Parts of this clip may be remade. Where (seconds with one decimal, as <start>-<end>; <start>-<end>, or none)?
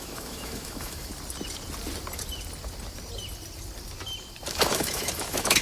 0.0-1.1; 4.5-5.6